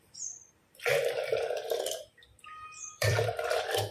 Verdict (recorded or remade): remade